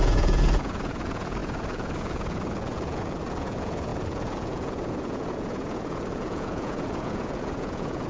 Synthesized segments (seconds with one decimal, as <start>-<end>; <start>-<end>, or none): 0.0-8.1